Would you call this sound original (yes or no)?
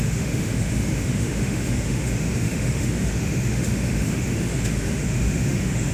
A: no